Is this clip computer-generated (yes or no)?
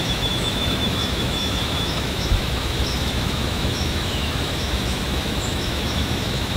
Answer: yes